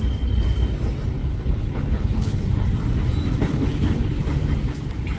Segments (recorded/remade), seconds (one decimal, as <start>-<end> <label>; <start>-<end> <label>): 0.0-1.2 recorded; 1.2-2.4 remade; 2.4-3.5 recorded; 3.5-4.1 remade; 4.1-5.2 recorded